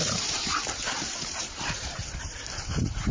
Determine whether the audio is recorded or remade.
remade